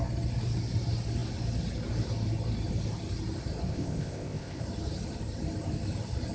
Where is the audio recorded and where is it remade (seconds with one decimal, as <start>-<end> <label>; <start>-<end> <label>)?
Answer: 0.0-3.7 recorded; 3.7-4.6 remade; 4.6-6.3 recorded